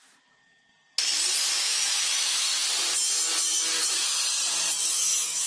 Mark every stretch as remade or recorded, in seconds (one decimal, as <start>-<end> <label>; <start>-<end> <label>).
0.0-0.7 remade; 0.7-1.6 recorded; 1.6-2.5 remade; 2.5-3.8 recorded; 3.8-4.3 remade; 4.3-4.8 recorded; 4.8-5.5 remade